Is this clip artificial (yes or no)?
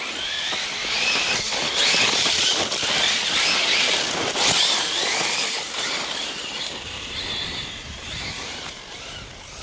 yes